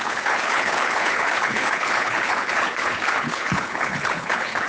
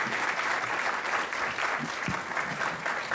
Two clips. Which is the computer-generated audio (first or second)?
first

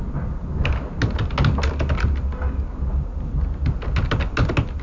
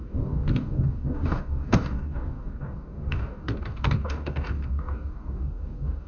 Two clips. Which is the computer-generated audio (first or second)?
second